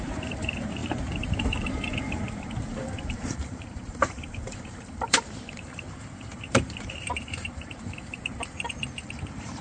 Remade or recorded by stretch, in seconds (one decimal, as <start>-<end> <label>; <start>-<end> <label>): 0.0-9.6 remade